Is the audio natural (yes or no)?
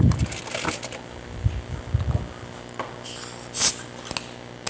yes